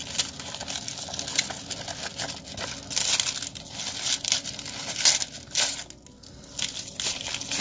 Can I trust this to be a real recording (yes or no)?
yes